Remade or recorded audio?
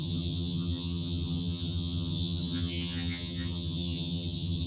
remade